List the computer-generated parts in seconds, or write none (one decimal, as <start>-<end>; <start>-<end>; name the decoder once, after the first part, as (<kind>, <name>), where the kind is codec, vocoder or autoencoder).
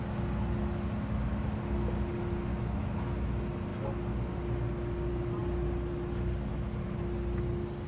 2.5-3.3 (autoencoder, DAC-VAE)